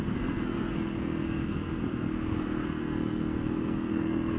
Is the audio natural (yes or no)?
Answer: no